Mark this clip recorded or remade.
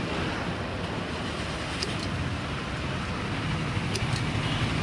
recorded